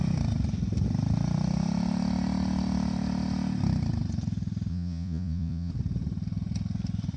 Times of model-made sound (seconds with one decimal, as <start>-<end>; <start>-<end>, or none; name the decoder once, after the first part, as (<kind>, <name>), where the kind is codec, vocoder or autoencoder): 4.7-5.7 (vocoder, Vocos)